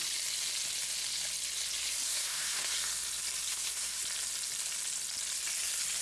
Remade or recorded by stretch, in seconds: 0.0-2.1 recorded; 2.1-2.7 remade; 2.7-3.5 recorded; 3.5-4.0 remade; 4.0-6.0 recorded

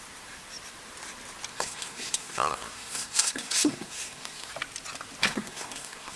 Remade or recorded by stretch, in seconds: 0.0-1.5 recorded; 1.5-4.5 remade; 4.5-5.2 recorded; 5.2-6.2 remade

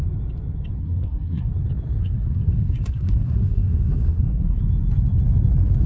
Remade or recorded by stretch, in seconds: 0.0-0.8 recorded; 0.8-1.5 remade; 1.5-2.0 recorded; 2.0-4.6 remade; 4.6-5.9 recorded

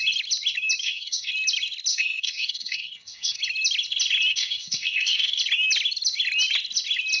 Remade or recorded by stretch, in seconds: 0.0-0.8 recorded; 0.8-1.3 remade; 1.3-1.9 recorded; 1.9-3.4 remade; 3.4-4.3 recorded; 4.3-5.4 remade; 5.4-7.2 recorded

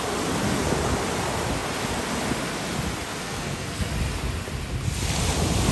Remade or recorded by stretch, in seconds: 0.0-3.2 recorded; 3.2-3.9 remade; 3.9-5.7 recorded